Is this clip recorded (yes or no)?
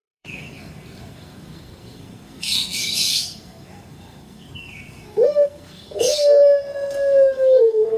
no